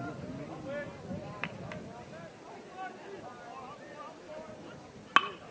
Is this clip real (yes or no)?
yes